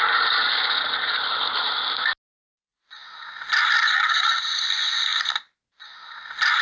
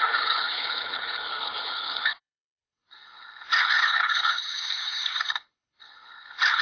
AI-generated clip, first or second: second